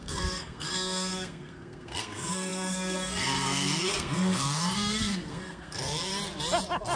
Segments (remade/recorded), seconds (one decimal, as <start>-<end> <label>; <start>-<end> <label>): 0.0-6.1 remade; 6.1-7.0 recorded